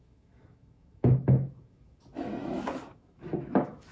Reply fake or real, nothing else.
fake